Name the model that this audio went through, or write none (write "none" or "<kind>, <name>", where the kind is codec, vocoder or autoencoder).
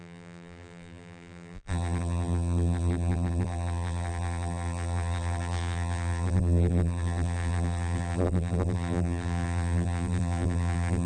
vocoder, BigVGAN v2